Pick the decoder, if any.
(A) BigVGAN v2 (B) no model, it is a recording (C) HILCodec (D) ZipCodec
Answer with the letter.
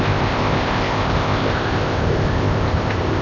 D